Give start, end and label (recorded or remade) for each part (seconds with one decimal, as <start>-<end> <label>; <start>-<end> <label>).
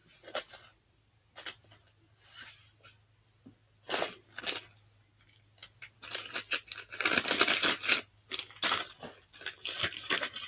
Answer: 0.0-10.5 recorded